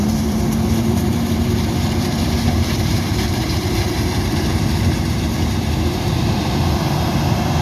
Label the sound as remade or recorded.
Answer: remade